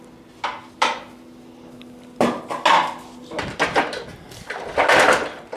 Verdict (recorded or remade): recorded